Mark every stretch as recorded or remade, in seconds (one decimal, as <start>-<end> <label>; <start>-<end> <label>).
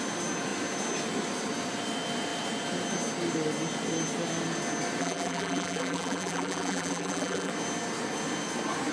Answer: 0.0-5.0 recorded; 5.0-7.5 remade; 7.5-8.9 recorded